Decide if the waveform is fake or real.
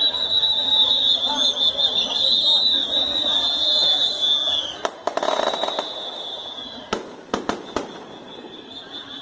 real